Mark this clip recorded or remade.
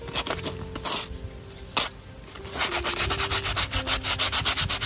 recorded